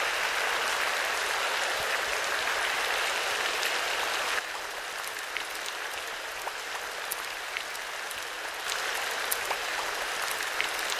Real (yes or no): yes